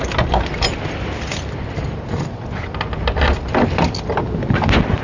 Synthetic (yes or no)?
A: no